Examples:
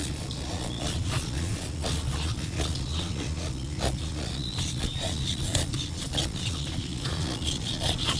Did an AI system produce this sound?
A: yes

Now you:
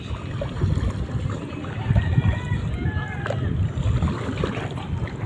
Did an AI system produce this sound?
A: no